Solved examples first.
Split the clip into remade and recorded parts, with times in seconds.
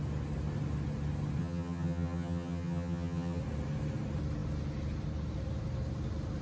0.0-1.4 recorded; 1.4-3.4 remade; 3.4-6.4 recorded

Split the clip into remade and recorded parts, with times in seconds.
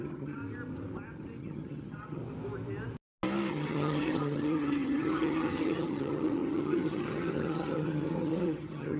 0.0-0.4 remade; 0.4-1.4 recorded; 1.4-2.2 remade; 2.2-3.5 recorded; 3.5-9.0 remade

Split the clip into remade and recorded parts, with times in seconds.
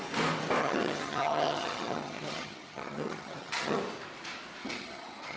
0.0-0.6 recorded; 0.6-3.8 remade; 3.8-4.6 recorded; 4.6-5.4 remade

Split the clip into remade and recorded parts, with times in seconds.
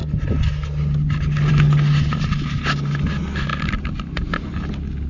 0.0-5.1 recorded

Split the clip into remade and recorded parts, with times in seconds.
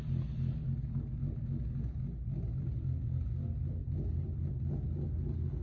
0.0-5.6 recorded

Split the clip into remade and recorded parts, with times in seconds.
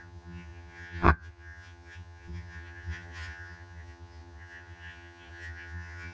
0.0-6.1 remade